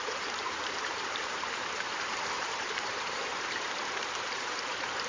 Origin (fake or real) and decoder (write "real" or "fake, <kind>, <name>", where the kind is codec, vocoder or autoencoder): fake, vocoder, BigVGAN v2